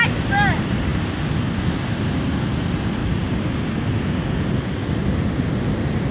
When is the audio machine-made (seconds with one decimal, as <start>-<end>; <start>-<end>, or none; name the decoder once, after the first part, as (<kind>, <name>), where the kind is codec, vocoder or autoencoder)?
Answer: none